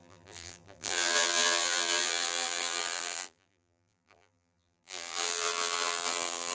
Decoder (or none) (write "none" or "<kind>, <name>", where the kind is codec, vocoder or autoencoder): vocoder, BigVGAN v2